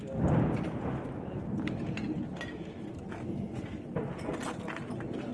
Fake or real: real